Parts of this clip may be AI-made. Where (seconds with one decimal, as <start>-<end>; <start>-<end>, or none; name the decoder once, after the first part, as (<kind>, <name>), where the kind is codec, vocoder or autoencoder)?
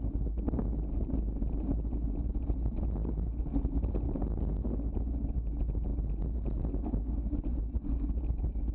none